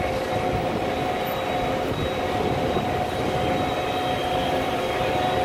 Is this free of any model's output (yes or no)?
yes